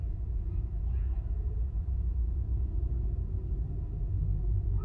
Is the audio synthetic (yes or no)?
yes